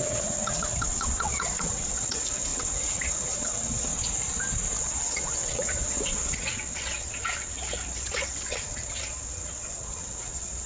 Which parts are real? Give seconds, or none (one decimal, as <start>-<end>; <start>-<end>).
3.9-4.8